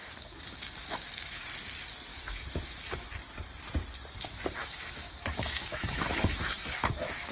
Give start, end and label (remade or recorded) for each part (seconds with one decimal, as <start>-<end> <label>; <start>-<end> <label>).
0.0-1.5 remade; 1.5-2.1 recorded; 2.1-3.1 remade; 3.1-4.6 recorded; 4.6-7.3 remade